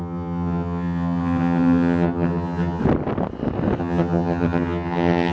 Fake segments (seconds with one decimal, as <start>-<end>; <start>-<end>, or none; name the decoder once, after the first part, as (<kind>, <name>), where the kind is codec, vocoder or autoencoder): 0.0-2.8 (vocoder, HiFi-GAN); 3.8-5.3